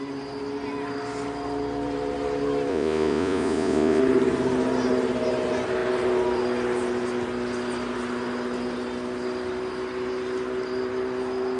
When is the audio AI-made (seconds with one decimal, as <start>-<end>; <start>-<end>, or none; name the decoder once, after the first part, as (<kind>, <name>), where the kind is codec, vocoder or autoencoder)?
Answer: 2.7-4.0 (vocoder, Vocos)